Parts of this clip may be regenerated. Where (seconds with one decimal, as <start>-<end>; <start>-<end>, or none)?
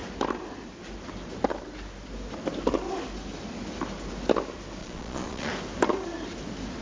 4.8-5.5